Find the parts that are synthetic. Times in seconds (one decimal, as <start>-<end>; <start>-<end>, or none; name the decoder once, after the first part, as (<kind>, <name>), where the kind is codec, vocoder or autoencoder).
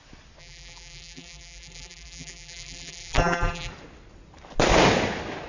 0.4-3.7 (vocoder, BigVGAN v2)